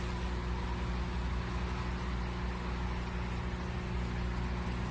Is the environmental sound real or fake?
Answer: real